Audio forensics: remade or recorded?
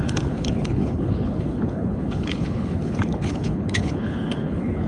remade